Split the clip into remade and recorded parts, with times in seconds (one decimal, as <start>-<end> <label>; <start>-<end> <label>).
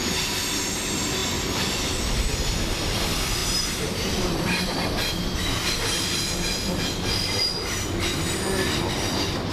0.0-3.4 recorded; 3.4-5.1 remade; 5.1-9.5 recorded